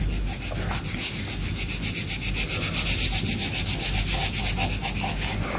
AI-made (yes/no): no